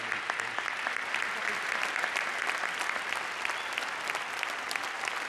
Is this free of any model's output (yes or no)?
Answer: yes